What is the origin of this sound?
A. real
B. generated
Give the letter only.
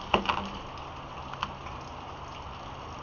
A